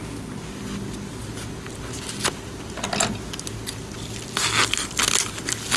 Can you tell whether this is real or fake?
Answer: real